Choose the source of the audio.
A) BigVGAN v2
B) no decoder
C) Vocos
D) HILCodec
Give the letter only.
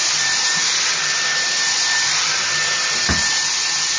A